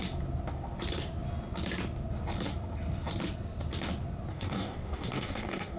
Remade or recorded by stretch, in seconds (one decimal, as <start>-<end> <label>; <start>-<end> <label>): 0.0-4.3 recorded; 4.3-5.8 remade